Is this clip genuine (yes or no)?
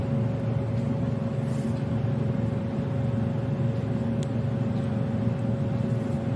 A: yes